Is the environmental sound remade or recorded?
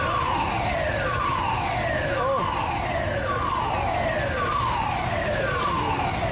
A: recorded